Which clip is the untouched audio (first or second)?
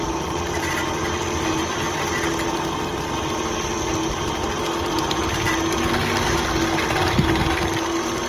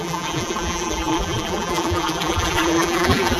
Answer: first